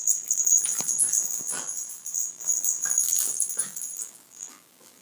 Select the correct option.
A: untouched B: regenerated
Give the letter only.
B